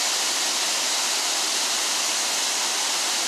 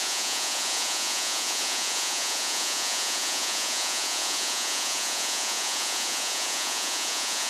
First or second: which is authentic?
first